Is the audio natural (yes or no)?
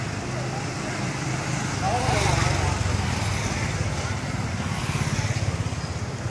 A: yes